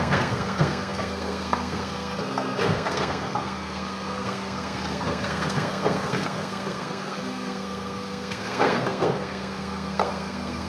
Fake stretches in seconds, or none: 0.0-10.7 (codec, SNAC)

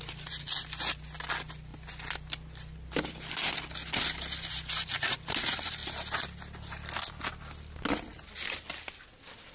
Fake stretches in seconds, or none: none

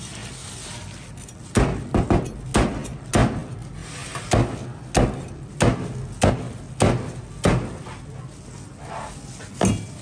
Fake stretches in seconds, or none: none

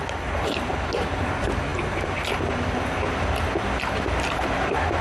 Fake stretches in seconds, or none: none

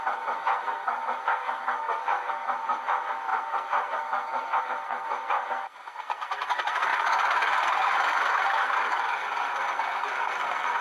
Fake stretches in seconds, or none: 0.0-10.8 (codec, SNAC)

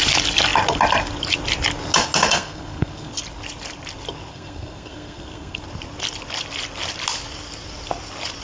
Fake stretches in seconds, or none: 2.3-3.1 (codec, SNAC); 4.3-5.6